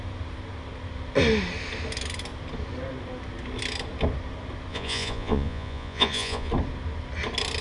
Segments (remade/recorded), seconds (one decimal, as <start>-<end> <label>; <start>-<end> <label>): 0.0-4.7 recorded; 4.7-6.5 remade; 6.5-7.6 recorded